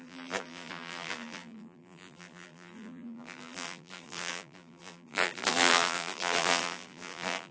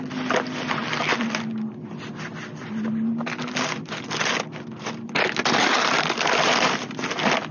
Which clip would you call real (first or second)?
second